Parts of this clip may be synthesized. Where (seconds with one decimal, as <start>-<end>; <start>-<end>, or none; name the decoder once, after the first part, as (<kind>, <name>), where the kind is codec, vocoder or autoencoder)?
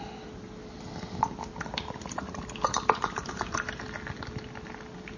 none